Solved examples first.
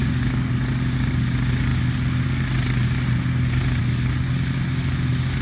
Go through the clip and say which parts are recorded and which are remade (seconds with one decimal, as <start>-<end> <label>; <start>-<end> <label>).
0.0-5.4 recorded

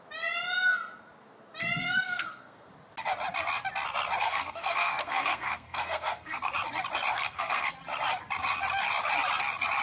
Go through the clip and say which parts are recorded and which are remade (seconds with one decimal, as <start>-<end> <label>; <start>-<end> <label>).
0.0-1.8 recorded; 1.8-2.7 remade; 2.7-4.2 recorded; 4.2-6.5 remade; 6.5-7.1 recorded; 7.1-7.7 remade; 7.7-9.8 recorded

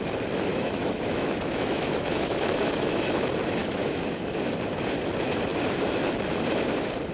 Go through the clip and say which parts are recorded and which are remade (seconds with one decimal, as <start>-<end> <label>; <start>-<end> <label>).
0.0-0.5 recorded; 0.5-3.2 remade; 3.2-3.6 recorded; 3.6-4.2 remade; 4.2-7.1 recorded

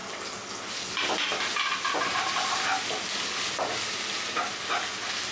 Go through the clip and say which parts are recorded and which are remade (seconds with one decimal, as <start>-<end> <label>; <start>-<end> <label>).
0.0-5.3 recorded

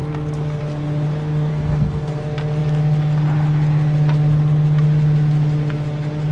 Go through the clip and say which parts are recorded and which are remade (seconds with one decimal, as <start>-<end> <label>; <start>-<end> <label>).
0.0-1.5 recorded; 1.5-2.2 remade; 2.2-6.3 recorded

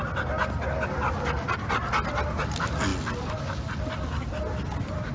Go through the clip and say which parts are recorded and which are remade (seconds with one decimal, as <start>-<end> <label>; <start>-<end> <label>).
0.0-5.1 recorded

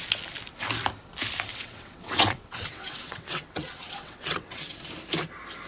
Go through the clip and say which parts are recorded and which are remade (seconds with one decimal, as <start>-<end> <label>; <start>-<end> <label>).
0.0-1.5 recorded; 1.5-4.9 remade; 4.9-5.7 recorded